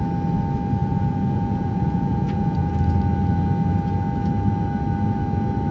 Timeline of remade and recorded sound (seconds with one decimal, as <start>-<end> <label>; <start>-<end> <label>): 0.0-0.8 recorded; 0.8-2.7 remade; 2.7-5.7 recorded